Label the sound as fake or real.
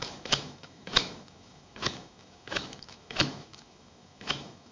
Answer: fake